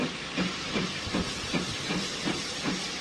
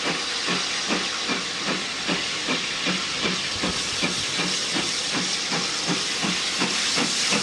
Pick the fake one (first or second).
first